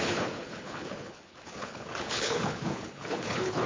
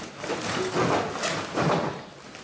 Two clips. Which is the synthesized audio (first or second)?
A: first